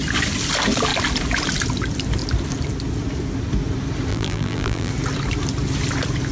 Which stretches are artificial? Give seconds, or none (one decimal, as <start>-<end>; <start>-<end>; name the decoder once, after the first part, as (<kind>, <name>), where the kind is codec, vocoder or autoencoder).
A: 4.1-4.9 (vocoder, BigVGAN v2)